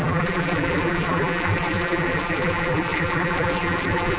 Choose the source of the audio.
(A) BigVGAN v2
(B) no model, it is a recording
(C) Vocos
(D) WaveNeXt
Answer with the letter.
A